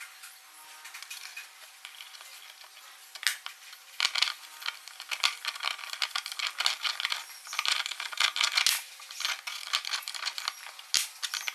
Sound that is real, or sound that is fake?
real